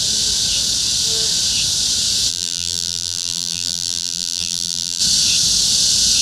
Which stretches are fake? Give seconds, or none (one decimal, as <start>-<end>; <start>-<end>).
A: 2.3-5.0